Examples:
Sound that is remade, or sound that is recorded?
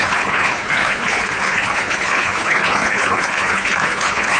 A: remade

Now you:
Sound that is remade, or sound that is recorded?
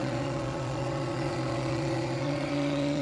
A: remade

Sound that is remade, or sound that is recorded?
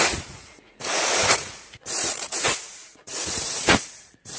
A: remade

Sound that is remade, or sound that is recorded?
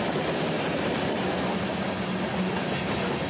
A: recorded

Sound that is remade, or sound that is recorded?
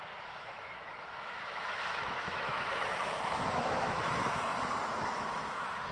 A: remade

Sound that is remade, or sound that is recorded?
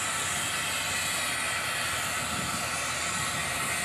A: recorded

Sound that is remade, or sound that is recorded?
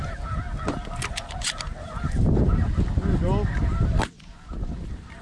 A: recorded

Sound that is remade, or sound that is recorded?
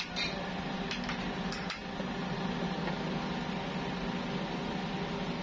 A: recorded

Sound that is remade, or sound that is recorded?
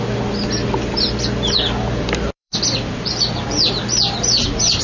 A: remade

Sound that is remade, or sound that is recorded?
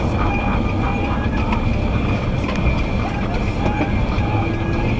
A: recorded